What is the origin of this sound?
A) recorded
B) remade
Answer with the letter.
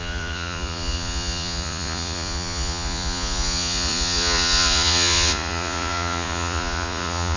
B